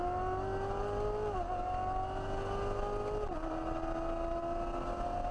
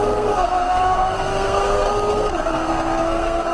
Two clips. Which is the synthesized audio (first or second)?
second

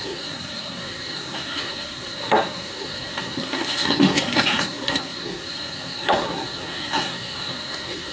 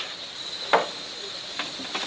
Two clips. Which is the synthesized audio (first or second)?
first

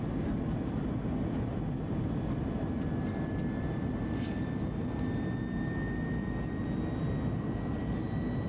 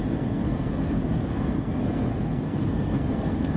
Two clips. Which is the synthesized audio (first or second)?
second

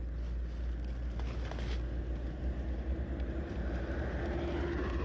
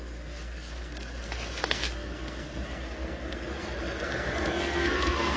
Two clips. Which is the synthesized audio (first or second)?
second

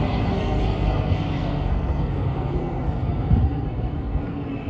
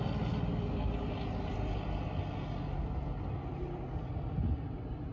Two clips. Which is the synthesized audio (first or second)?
first